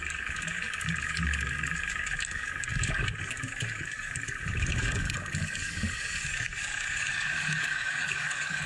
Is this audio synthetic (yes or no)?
yes